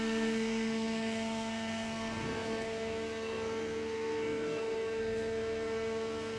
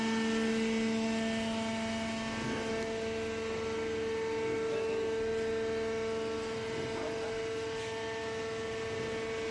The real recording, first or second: second